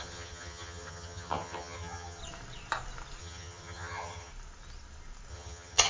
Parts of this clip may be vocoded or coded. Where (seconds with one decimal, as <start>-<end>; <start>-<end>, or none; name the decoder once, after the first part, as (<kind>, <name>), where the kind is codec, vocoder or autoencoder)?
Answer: 0.0-2.2 (vocoder, HiFi-GAN); 3.2-4.3; 5.3-5.9